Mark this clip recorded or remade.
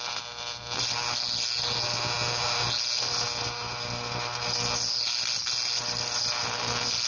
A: recorded